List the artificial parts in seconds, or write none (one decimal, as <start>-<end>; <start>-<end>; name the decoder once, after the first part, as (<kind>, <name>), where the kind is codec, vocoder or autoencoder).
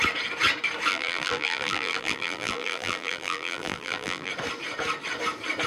0.9-4.3 (vocoder, BigVGAN v2)